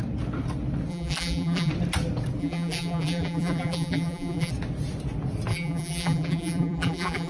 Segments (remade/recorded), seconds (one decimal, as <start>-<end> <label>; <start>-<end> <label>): 0.0-0.9 recorded; 0.9-1.7 remade; 1.7-2.4 recorded; 2.4-4.5 remade; 4.5-5.5 recorded; 5.5-7.3 remade

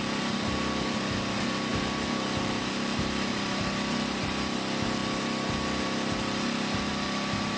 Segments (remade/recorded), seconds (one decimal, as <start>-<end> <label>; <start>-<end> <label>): 0.0-1.7 recorded; 1.7-4.2 remade; 4.2-7.6 recorded